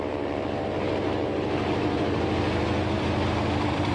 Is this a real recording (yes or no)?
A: no